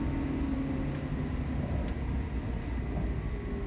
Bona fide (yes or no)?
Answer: yes